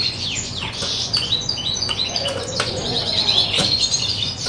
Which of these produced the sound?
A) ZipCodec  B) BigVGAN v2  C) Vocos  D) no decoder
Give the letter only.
C